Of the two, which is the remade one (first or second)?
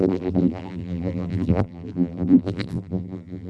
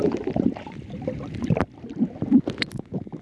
first